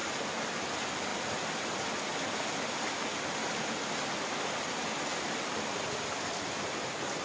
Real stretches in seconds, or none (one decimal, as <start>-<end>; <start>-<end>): 0.0-7.2

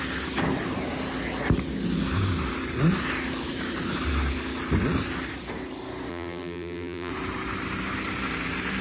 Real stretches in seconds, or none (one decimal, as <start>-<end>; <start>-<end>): 0.0-6.1; 7.1-8.8

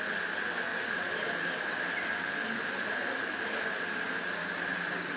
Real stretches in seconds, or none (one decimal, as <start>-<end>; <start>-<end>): 0.0-0.7; 3.8-5.2

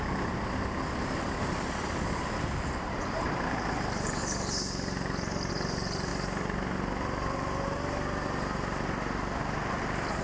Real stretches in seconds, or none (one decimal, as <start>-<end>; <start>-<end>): 4.2-5.5; 6.1-9.4

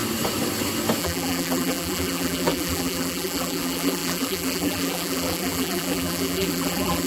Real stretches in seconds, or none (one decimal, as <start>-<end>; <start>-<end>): 0.0-1.0